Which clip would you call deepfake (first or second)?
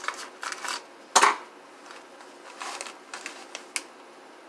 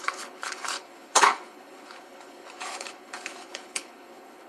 second